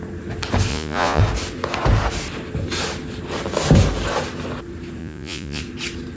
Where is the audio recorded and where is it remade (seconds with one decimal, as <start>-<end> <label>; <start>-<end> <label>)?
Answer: 0.0-0.7 recorded; 0.7-1.2 remade; 1.2-5.0 recorded; 5.0-5.6 remade; 5.6-6.2 recorded